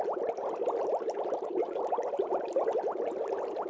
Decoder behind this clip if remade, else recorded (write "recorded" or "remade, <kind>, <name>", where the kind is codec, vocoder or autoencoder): recorded